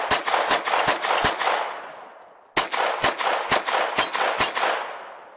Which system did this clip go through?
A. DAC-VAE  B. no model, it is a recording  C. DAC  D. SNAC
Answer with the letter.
B